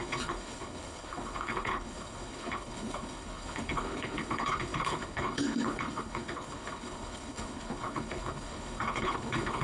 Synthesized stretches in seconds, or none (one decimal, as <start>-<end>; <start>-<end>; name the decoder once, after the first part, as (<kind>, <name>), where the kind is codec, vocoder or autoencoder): 0.0-9.6 (codec, HILCodec)